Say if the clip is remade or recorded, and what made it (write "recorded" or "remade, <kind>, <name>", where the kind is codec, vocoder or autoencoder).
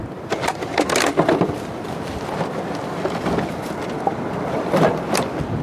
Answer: remade, vocoder, BigVGAN v2